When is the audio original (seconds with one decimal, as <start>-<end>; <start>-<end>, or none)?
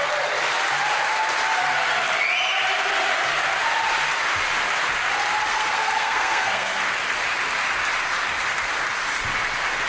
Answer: 0.0-5.5; 6.8-9.9